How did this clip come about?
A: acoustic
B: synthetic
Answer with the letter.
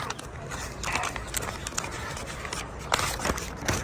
A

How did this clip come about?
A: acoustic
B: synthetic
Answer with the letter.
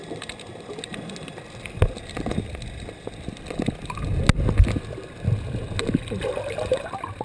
A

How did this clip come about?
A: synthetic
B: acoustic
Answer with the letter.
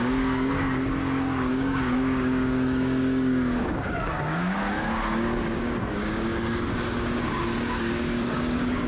A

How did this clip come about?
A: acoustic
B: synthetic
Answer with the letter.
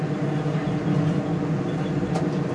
A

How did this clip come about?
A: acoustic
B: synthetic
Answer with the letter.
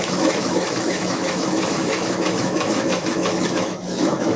B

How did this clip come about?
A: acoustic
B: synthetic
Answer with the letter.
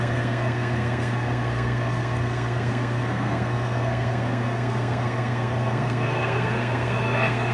B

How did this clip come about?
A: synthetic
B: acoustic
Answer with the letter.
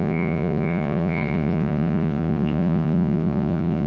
A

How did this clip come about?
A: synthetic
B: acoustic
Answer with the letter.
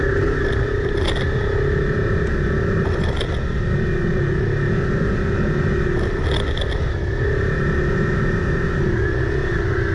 B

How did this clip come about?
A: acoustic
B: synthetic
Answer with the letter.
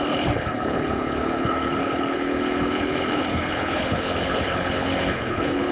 B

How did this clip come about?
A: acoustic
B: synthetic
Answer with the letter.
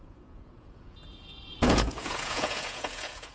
B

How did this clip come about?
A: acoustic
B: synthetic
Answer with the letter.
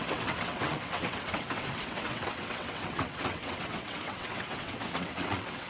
B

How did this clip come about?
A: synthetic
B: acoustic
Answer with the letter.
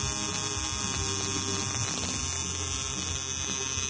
B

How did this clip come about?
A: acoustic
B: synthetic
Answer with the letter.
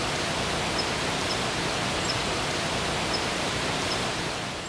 A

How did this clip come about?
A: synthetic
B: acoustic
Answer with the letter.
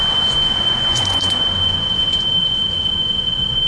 A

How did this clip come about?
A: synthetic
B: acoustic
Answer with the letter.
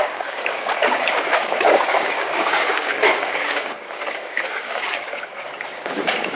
A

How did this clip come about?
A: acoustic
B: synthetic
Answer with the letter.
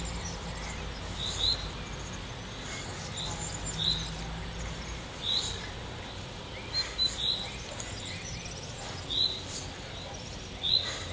A